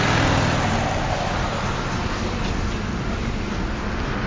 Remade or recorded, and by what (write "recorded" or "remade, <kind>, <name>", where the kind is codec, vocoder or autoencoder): recorded